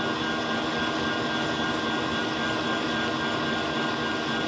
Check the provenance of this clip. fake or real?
real